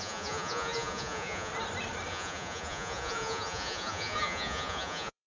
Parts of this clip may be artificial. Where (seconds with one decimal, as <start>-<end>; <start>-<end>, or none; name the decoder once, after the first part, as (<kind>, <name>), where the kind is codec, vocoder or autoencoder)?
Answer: 0.0-1.5 (vocoder, Vocos); 2.1-5.3